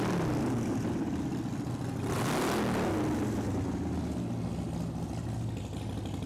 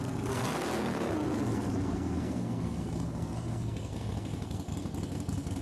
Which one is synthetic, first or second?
second